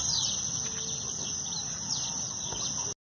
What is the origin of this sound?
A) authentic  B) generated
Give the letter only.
A